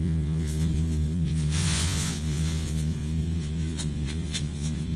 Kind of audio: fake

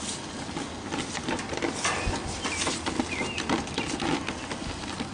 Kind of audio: real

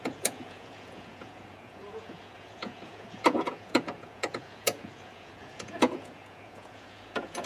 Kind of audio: fake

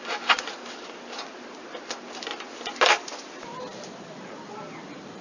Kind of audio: real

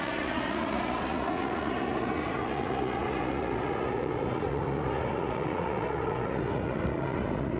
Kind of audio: fake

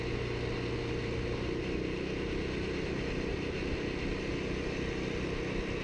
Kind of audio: real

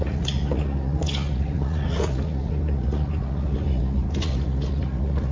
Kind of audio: fake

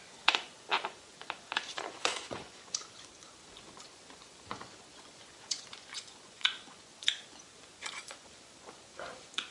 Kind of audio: fake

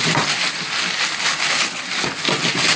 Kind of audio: real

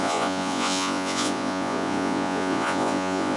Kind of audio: fake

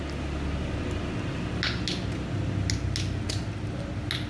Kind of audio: real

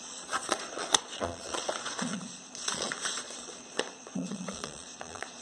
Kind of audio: fake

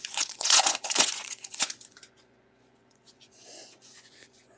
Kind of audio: fake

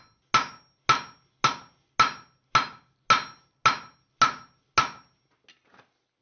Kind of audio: real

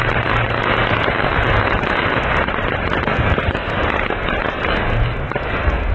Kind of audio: real